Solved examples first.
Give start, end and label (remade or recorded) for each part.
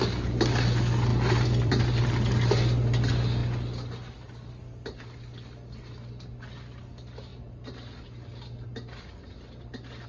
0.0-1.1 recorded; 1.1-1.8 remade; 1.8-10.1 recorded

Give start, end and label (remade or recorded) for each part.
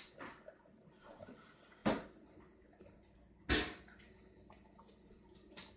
0.0-5.8 recorded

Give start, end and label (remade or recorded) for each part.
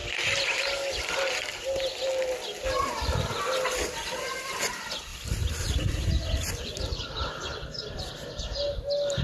0.0-9.2 recorded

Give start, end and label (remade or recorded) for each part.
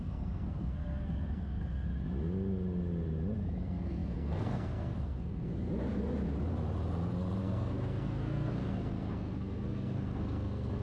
0.0-1.9 remade; 1.9-3.6 recorded; 3.6-5.5 remade; 5.5-7.4 recorded; 7.4-10.8 remade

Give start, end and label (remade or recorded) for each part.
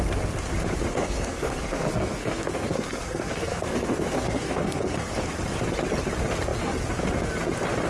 0.0-0.9 recorded; 0.9-5.1 remade; 5.1-7.9 recorded